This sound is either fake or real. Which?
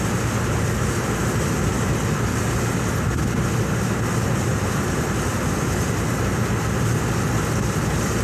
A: real